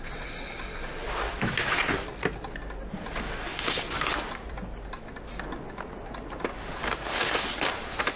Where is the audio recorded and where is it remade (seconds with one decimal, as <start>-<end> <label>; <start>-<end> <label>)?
0.0-8.2 recorded